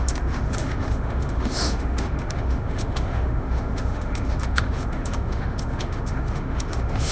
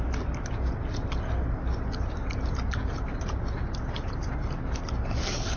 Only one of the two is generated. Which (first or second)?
first